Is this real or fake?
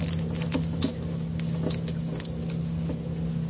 real